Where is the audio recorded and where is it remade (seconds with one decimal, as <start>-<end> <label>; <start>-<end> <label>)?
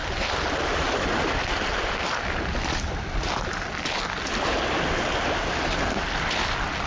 0.0-6.9 recorded